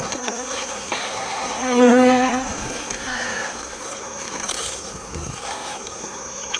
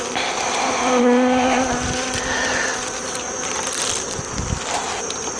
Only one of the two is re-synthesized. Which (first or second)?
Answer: first